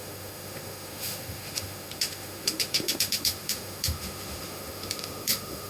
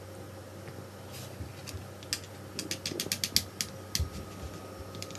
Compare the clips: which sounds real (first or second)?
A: second